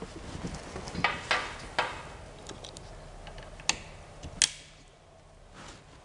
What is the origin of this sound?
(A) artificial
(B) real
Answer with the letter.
B